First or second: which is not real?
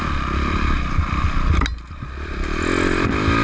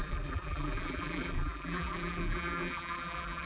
second